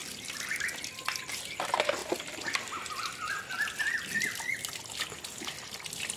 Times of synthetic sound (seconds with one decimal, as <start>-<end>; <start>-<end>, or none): none